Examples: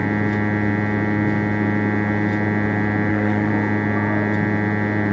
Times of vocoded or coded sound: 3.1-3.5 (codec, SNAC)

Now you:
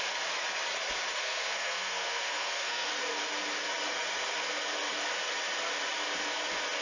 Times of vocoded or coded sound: 1.2-2.9 (codec, SNAC)

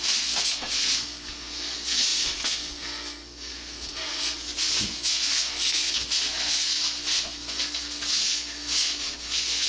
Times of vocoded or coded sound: 0.0-9.7 (codec, SNAC)

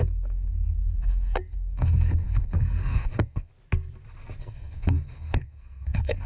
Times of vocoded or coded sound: 0.0-3.5 (codec, SNAC); 4.4-6.3